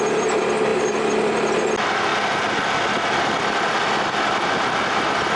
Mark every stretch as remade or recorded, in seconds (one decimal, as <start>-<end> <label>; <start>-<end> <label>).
0.0-5.4 recorded